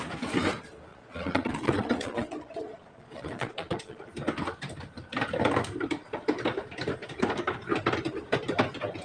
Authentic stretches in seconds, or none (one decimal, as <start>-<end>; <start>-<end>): 0.0-0.9; 4.1-9.0